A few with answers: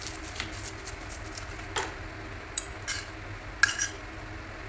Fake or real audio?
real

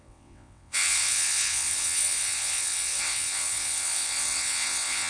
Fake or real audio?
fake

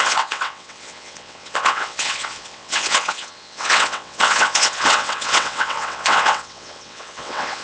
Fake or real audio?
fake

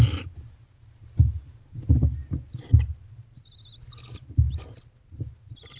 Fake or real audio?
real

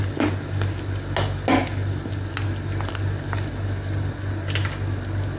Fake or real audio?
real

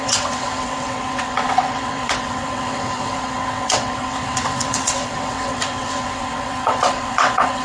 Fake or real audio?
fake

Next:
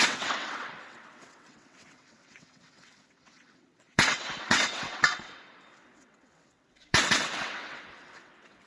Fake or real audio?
fake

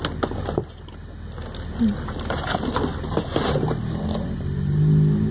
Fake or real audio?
real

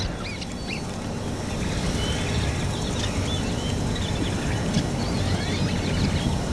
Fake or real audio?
real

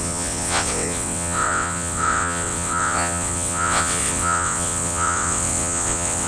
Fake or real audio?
fake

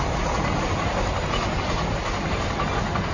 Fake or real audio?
real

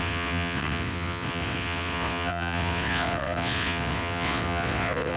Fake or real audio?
fake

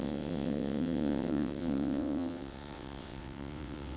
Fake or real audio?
fake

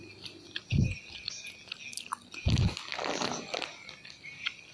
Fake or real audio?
real